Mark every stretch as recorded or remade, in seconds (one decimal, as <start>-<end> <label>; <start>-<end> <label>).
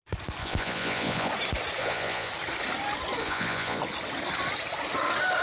0.0-0.4 recorded; 0.4-1.3 remade; 1.3-1.8 recorded; 1.8-2.3 remade; 2.3-3.2 recorded; 3.2-3.8 remade; 3.8-5.4 recorded